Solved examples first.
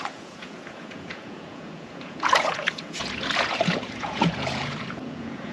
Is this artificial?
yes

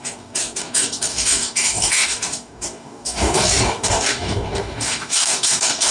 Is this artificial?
yes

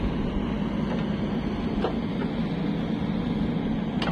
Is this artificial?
no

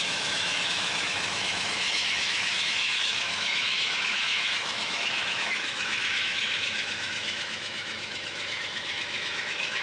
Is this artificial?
yes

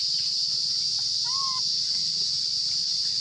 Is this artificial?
no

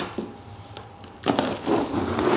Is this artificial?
no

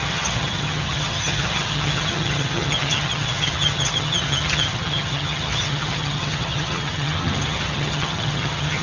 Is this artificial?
yes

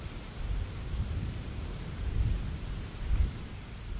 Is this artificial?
yes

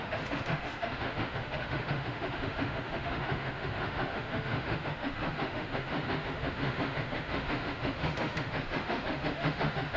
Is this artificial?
yes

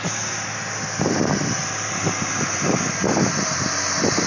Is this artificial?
no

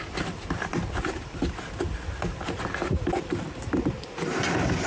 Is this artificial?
no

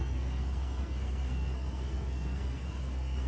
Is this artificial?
yes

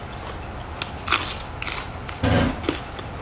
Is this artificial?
no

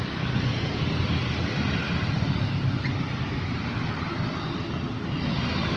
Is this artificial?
no